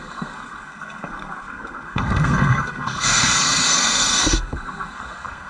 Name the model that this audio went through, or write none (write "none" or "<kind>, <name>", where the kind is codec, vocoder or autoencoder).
codec, SNAC